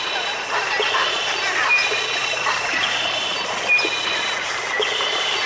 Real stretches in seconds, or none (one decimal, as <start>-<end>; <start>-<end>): 0.0-1.8; 3.3-5.5